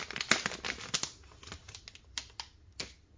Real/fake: real